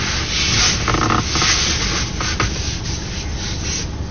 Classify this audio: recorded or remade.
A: recorded